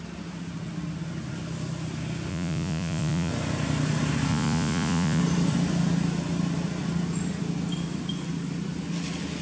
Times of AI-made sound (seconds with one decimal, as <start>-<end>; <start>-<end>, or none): 2.3-3.3; 4.3-5.2